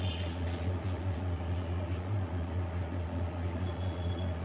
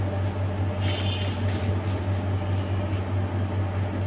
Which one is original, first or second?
second